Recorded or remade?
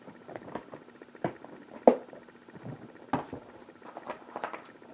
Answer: recorded